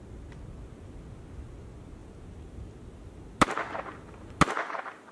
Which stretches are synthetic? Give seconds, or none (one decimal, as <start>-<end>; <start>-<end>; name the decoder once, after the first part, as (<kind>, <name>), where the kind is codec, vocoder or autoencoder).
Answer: none